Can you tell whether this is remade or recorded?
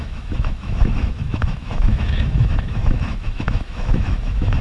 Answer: remade